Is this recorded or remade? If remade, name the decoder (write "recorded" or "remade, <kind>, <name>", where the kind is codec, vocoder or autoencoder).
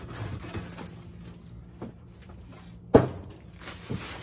recorded